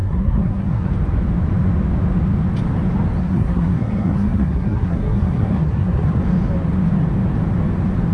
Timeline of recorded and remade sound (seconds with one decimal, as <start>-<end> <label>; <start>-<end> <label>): 0.0-0.9 remade; 0.9-3.2 recorded; 3.2-6.2 remade; 6.2-8.1 recorded